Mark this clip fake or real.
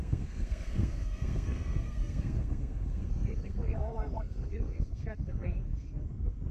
fake